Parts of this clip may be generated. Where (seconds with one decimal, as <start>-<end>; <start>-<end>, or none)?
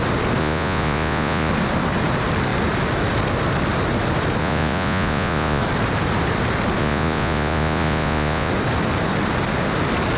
0.4-1.5; 4.4-5.6; 6.8-8.5